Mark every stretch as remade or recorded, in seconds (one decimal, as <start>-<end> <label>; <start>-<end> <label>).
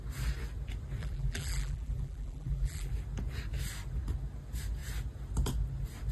0.0-1.0 recorded; 1.0-2.9 remade; 2.9-6.1 recorded